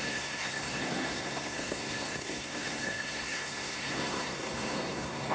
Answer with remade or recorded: remade